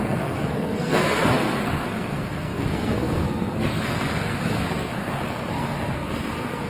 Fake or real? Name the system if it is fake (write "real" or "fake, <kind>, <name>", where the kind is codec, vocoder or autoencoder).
fake, codec, SNAC